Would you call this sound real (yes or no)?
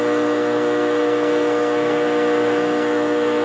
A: no